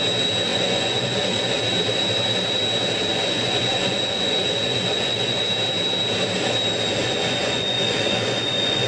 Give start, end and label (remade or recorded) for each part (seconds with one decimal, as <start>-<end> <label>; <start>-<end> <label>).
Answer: 0.0-0.5 recorded; 0.5-1.6 remade; 1.6-3.1 recorded; 3.1-5.4 remade; 5.4-7.0 recorded; 7.0-8.9 remade